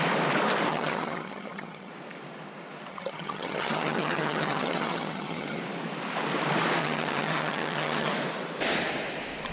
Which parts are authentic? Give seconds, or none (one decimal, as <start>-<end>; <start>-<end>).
0.0-0.7; 1.9-2.9; 5.6-6.8; 8.1-9.5